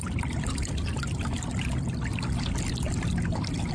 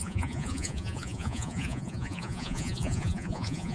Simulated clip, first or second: second